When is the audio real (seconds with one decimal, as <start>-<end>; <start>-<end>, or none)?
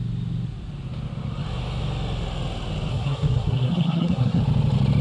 0.0-2.9; 4.4-5.0